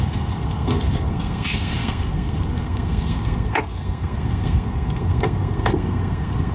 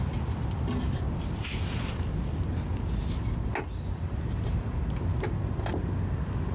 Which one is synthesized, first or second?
first